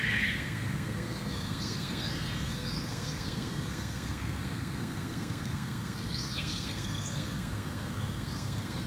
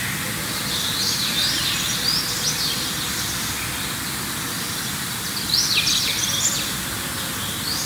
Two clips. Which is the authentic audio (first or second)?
second